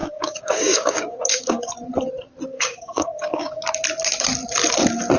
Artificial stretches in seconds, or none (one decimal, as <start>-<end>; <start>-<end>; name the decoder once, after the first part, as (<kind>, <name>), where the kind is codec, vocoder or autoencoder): 0.0-1.7 (codec, DAC); 2.5-3.6